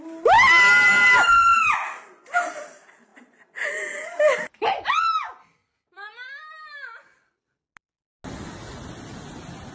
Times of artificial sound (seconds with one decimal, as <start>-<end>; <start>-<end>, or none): none